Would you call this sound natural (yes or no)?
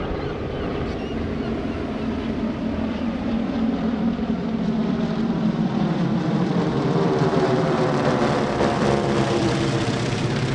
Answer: no